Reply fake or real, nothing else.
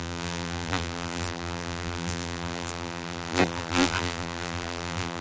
fake